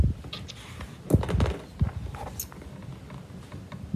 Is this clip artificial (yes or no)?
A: no